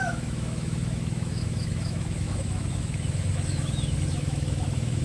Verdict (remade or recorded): remade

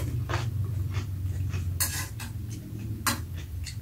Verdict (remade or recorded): recorded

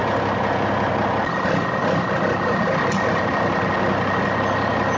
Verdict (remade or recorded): recorded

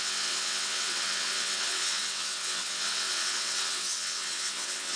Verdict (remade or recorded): remade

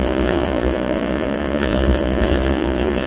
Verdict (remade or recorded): remade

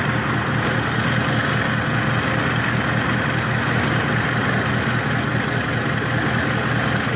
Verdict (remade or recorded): recorded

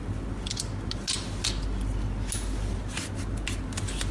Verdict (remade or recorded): recorded